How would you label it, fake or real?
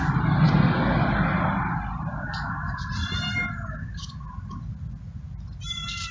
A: real